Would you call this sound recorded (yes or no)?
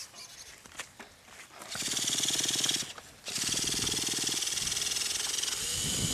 yes